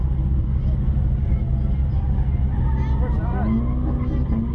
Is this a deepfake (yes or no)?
no